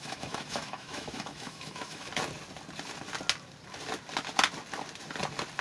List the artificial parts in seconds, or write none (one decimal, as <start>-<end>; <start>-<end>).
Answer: 0.0-2.1